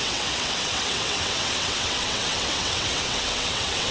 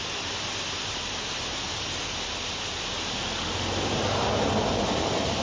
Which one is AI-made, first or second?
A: first